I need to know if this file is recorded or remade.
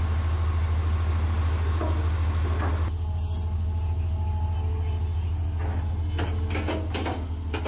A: recorded